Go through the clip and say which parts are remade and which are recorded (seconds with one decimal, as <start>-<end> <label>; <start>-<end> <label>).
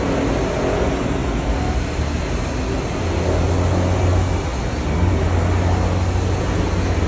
0.0-7.1 recorded